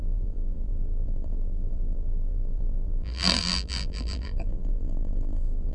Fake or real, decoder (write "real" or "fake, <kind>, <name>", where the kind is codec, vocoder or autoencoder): fake, vocoder, BigVGAN v2